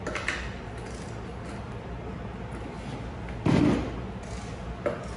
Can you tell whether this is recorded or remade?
recorded